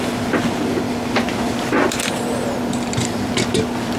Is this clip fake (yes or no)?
no